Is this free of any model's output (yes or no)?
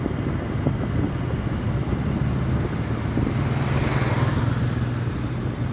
yes